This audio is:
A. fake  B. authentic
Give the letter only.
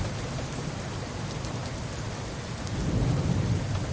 B